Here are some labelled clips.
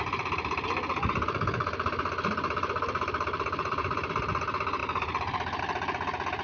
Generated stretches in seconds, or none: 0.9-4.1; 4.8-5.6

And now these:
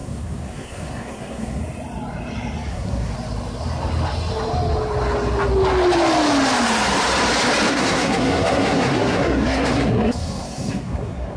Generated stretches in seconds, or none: 0.0-1.6; 2.7-3.1; 7.7-11.4

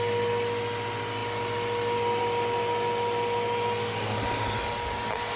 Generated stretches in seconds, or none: none

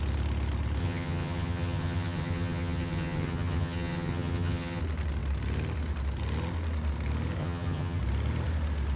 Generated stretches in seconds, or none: 0.8-4.8; 7.4-8.0

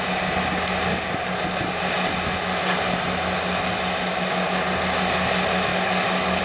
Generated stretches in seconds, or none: 0.9-1.6; 5.7-6.4

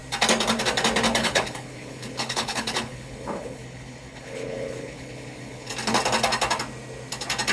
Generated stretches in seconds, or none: 1.2-5.7